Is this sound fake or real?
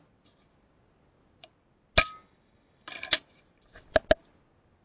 real